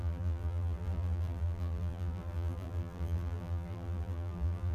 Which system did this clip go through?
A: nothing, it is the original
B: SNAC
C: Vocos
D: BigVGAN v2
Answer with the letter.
D